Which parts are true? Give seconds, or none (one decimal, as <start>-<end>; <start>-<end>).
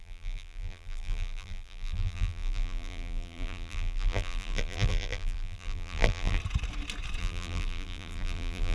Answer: 6.4-7.2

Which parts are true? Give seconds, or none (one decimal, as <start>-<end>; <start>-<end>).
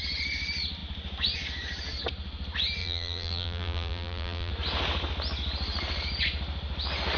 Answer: 0.0-2.8; 4.5-7.2